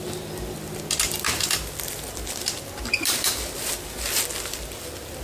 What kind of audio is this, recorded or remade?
recorded